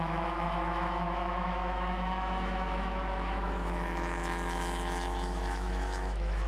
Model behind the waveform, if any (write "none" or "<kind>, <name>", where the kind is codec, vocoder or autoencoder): autoencoder, DAC-VAE